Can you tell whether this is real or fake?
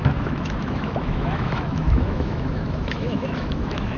fake